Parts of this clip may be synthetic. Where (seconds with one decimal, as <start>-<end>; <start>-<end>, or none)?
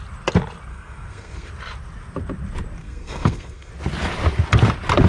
0.7-1.5; 2.8-3.7